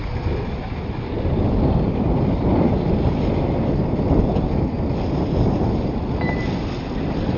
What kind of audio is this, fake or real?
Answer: real